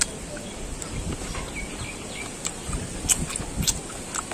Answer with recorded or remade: recorded